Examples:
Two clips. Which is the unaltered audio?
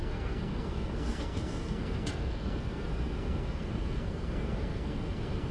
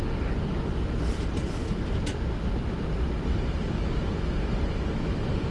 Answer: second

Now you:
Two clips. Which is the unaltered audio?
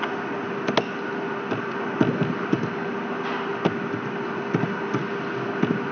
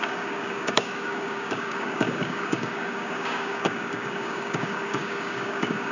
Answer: first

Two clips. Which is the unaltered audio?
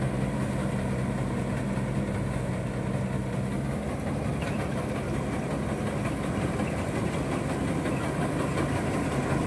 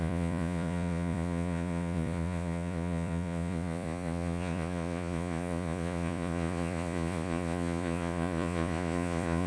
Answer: first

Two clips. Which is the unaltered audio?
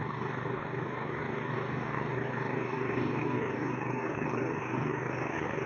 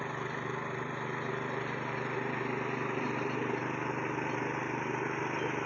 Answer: second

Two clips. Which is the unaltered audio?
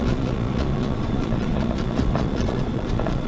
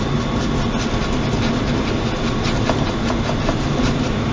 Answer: second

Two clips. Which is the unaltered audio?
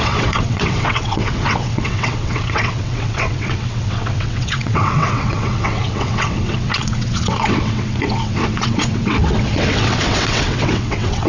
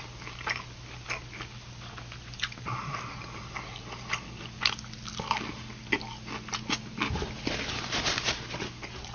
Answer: second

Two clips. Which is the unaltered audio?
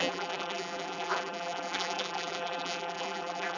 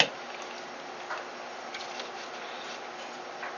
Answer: second